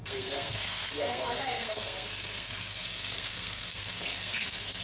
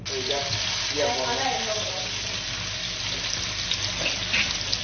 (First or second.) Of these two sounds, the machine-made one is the first